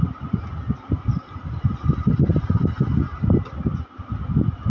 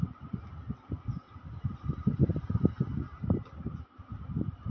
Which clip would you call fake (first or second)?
second